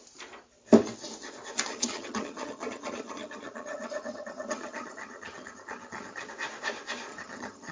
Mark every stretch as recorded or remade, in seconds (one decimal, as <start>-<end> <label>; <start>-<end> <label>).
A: 0.0-1.7 recorded; 1.7-6.3 remade; 6.3-7.1 recorded; 7.1-7.7 remade